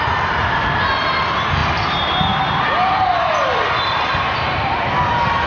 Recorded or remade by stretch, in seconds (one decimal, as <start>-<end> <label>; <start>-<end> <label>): 0.0-1.6 recorded; 1.6-4.9 remade; 4.9-5.5 recorded